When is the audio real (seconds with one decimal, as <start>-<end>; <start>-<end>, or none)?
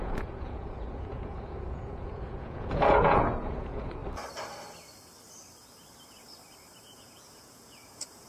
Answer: 4.0-6.8